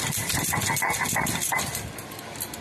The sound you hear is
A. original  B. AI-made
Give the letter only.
A